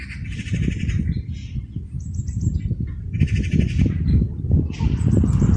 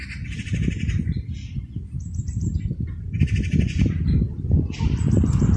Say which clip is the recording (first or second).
first